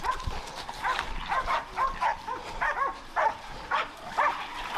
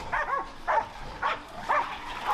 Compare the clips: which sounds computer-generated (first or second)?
first